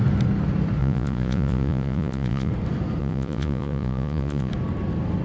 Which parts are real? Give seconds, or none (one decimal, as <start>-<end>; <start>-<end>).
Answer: 0.0-0.8; 2.5-3.0; 4.5-5.2